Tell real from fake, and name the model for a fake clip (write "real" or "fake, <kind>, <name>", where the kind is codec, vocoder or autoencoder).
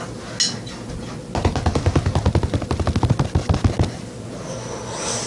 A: real